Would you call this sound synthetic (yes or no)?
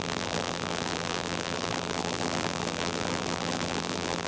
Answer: yes